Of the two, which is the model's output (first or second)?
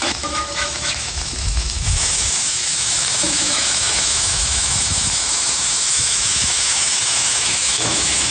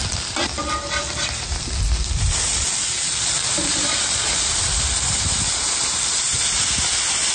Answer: first